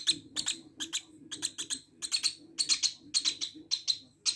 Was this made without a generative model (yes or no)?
yes